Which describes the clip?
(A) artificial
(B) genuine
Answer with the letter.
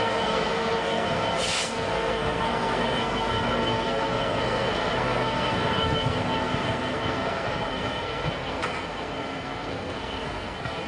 A